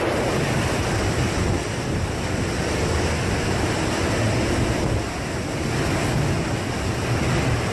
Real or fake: real